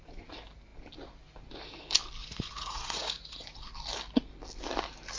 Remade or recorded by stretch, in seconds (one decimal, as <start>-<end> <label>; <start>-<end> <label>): 0.0-2.2 recorded; 2.2-3.6 remade; 3.6-5.2 recorded